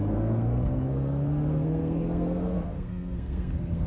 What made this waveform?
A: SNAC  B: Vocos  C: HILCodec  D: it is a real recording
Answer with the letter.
A